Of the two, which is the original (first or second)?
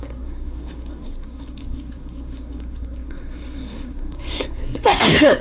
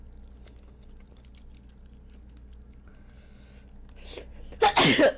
second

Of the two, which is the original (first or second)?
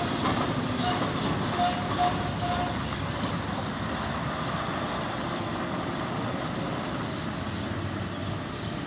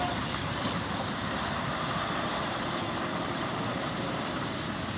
first